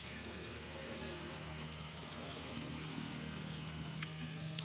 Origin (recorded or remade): remade